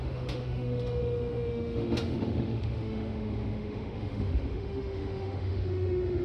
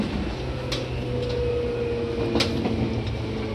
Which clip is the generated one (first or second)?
first